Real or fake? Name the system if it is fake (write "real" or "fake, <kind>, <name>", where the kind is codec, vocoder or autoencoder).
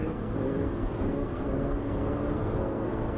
fake, codec, SNAC